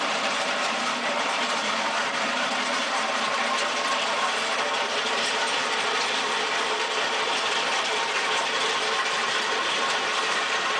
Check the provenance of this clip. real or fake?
fake